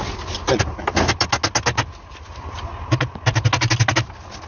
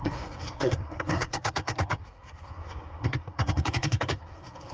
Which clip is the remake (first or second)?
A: second